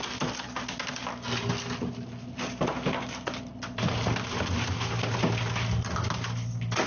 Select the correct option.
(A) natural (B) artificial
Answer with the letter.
A